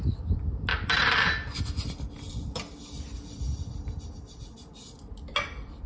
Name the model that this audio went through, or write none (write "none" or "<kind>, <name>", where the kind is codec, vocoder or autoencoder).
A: none